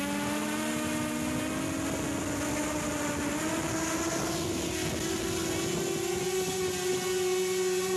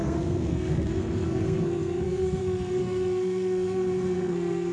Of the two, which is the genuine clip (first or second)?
first